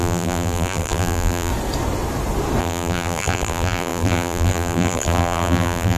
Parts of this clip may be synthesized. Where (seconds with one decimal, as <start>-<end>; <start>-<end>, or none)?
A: 0.0-1.5; 2.6-6.0